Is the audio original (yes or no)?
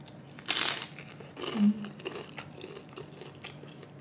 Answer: yes